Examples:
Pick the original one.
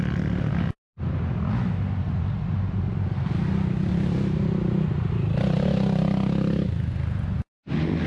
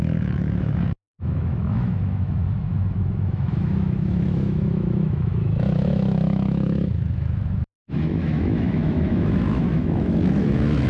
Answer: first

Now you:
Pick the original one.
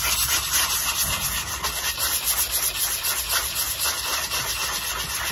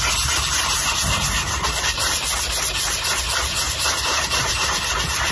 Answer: first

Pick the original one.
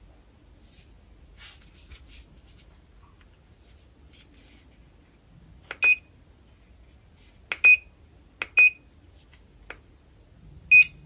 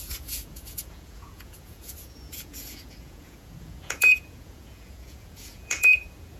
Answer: first